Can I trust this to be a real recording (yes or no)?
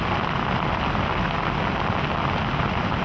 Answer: yes